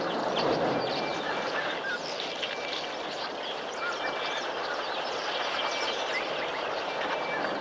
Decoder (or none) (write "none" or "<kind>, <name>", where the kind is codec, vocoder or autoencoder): none